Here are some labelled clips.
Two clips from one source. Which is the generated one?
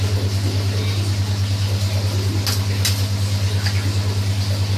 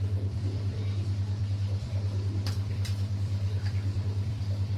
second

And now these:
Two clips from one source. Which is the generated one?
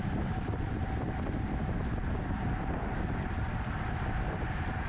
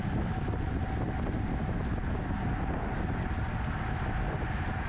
first